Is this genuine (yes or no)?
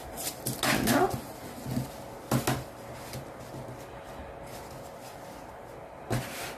yes